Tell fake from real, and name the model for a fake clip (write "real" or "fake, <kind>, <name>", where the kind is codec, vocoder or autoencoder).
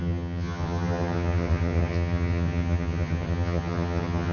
fake, vocoder, HiFi-GAN